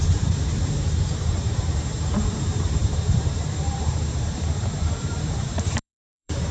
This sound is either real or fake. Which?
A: fake